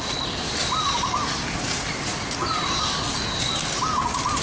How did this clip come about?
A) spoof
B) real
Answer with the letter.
B